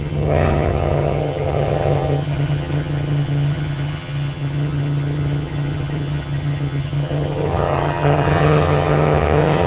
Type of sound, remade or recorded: remade